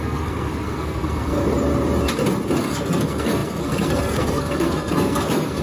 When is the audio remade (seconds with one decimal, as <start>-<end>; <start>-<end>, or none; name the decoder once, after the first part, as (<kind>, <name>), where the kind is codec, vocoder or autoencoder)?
0.0-1.4 (codec, SNAC); 2.6-5.6